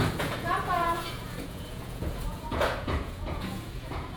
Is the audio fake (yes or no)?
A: yes